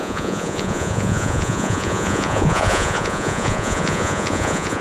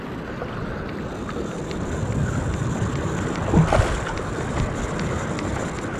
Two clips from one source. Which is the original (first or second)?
second